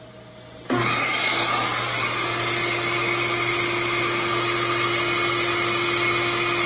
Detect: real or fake real